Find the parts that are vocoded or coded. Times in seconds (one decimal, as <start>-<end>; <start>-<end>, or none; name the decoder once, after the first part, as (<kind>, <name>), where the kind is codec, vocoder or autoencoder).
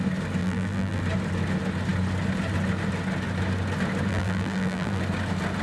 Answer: 0.4-1.0 (vocoder, BigVGAN v2); 4.1-5.0